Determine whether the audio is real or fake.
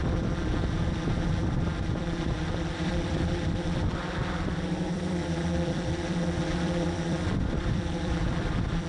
fake